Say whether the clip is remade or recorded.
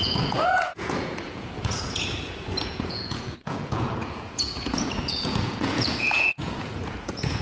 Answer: remade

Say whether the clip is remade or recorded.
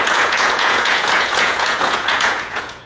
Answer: remade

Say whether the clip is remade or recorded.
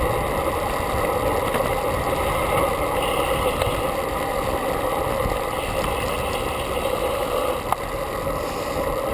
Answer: recorded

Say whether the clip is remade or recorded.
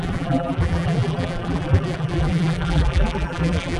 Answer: remade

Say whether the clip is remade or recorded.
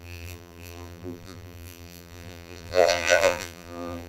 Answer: remade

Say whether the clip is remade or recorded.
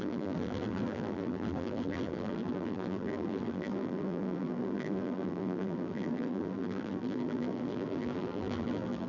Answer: remade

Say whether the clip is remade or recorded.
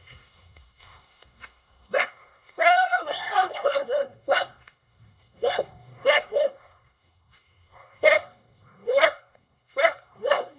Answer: remade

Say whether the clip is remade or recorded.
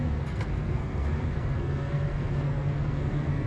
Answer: remade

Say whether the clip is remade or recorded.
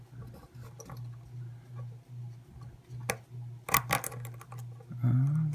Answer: recorded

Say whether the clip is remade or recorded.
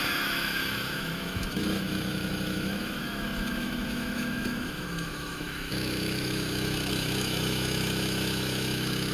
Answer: remade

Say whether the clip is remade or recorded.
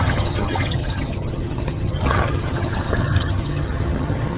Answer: remade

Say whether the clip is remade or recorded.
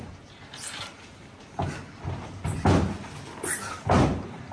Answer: recorded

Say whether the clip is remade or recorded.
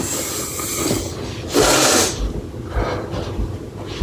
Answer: recorded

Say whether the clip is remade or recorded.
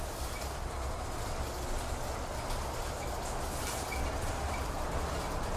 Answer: recorded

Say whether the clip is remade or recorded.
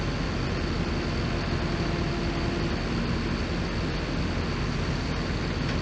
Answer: recorded